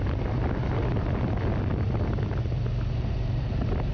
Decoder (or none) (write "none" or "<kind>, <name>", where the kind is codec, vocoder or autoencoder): none